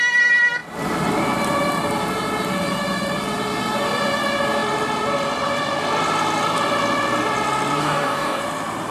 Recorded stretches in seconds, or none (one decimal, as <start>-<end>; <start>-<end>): 0.0-7.8; 8.4-8.9